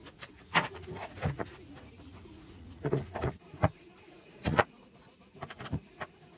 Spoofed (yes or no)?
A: yes